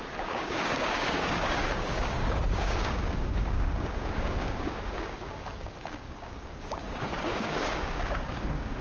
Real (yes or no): no